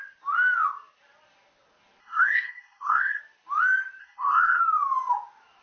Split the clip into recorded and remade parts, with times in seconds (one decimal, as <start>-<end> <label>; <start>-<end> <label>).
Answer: 0.0-2.0 recorded; 2.0-3.2 remade; 3.2-4.0 recorded; 4.0-4.6 remade; 4.6-5.6 recorded